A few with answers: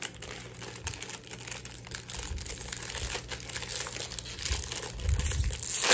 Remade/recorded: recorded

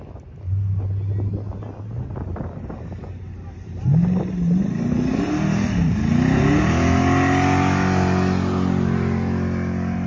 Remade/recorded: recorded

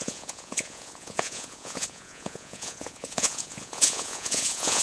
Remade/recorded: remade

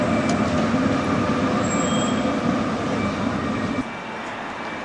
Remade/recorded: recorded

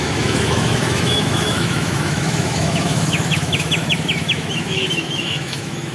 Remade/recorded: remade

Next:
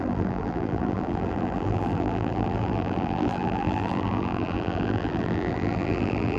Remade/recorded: remade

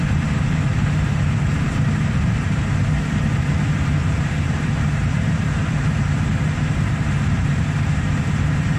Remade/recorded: remade